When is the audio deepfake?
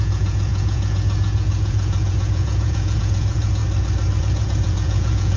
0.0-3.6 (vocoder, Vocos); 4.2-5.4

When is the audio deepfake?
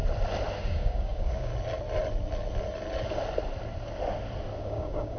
0.6-1.5 (codec, DAC); 4.6-5.2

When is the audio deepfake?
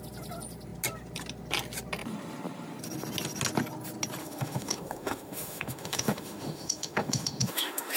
4.2-8.0 (autoencoder, DAC-VAE)